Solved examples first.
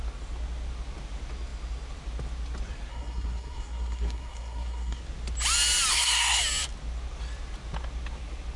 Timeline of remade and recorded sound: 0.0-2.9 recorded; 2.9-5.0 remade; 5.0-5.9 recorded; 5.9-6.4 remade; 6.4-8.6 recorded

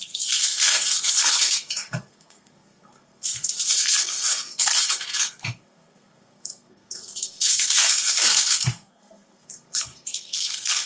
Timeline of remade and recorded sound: 0.0-10.9 remade

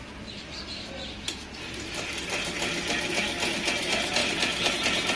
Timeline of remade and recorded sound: 0.0-5.2 recorded

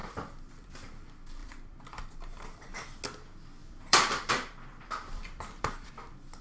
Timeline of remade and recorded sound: 0.0-0.7 remade; 0.7-1.4 recorded; 1.4-2.0 remade; 2.0-3.6 recorded; 3.6-5.9 remade; 5.9-6.4 recorded

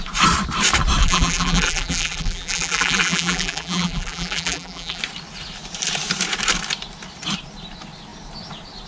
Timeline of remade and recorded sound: 0.0-1.0 recorded; 1.0-5.0 remade; 5.0-8.9 recorded

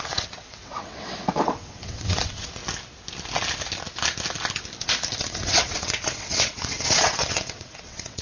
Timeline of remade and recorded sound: 0.0-2.6 remade; 2.6-5.2 recorded; 5.2-8.2 remade

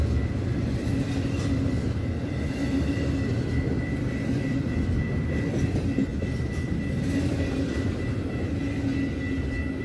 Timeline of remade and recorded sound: 0.0-6.1 remade; 6.1-7.0 recorded; 7.0-8.9 remade; 8.9-9.8 recorded